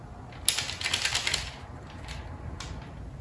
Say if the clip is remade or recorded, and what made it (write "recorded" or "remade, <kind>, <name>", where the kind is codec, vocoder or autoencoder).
recorded